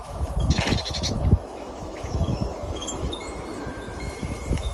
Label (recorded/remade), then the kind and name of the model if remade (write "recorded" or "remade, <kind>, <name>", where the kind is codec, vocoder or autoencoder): remade, autoencoder, DAC-VAE